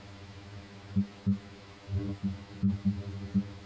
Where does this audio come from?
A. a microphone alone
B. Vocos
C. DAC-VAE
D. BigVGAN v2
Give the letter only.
C